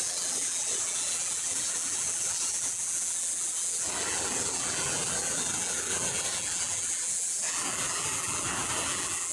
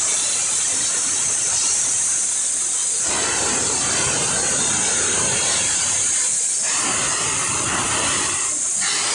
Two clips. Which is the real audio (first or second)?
second